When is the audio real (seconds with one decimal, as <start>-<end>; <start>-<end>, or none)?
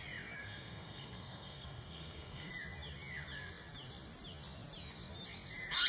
0.0-0.4; 2.5-5.9